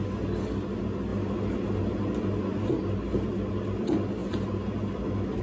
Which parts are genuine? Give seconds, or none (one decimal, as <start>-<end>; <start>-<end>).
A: 0.0-5.4